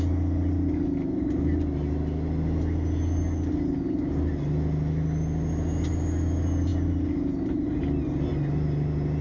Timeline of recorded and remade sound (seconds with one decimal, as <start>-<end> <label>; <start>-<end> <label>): 0.0-9.2 recorded

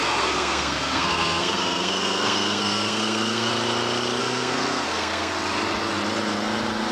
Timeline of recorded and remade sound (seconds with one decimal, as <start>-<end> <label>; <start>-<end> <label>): 0.0-3.5 remade; 3.5-4.2 recorded; 4.2-5.3 remade; 5.3-6.9 recorded

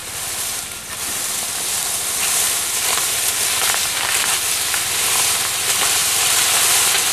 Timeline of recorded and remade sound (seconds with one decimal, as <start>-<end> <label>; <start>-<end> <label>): 0.0-7.1 recorded

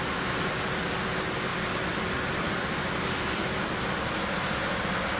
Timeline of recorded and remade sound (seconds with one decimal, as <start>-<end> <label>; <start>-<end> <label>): 0.0-1.5 recorded; 1.5-3.7 remade; 3.7-5.2 recorded

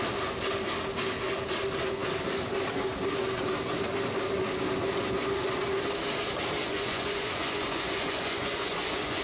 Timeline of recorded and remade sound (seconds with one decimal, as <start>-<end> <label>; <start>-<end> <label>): 0.0-6.6 recorded; 6.6-9.2 remade